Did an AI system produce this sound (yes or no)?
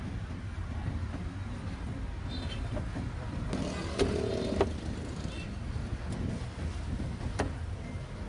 no